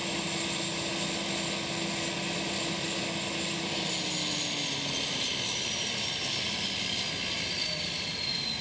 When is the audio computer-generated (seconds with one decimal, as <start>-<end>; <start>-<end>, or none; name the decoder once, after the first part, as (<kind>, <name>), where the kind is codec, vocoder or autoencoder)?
none

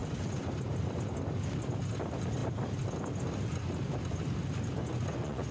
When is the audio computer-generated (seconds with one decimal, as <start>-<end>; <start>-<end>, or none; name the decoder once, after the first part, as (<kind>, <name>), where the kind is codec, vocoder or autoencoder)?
4.8-5.5 (vocoder, Vocos)

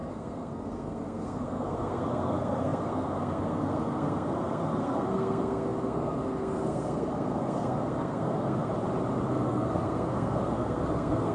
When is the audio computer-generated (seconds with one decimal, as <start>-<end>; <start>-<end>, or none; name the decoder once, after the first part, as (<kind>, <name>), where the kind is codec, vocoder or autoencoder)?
0.0-8.7 (codec, SNAC); 9.3-11.3

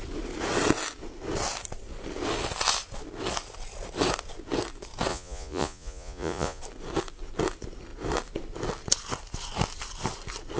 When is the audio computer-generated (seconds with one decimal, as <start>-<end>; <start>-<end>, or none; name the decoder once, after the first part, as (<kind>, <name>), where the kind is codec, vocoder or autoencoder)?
5.1-6.6 (vocoder, Vocos)

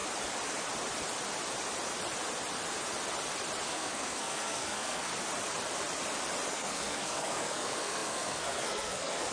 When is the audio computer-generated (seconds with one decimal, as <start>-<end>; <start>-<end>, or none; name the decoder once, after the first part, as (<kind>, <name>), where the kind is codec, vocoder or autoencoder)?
3.7-5.1 (codec, SNAC); 6.5-9.3